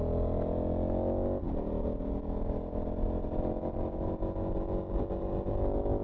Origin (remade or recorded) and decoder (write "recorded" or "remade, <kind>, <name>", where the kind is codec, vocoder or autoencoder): recorded